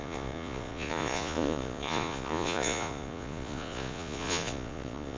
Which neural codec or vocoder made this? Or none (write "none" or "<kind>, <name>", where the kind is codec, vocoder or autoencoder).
vocoder, Vocos